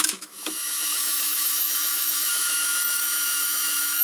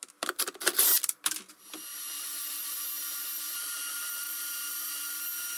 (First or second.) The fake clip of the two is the first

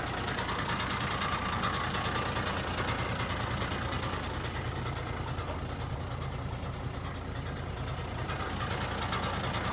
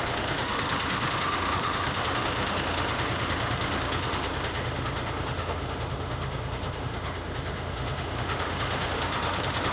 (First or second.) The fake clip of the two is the second